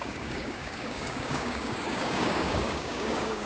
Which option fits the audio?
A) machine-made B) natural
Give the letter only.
A